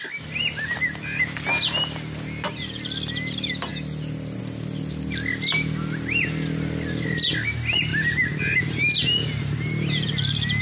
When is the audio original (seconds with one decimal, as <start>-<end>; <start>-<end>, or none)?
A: 0.0-10.6